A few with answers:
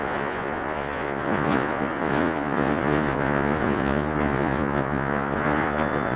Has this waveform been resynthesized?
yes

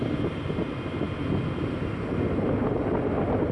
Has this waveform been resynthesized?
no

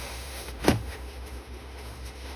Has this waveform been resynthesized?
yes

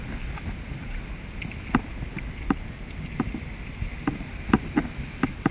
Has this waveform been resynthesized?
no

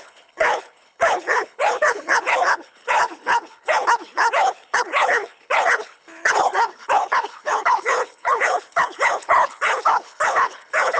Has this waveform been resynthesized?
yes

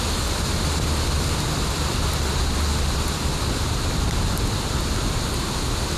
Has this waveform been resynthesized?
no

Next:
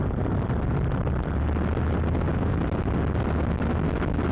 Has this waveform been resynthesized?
no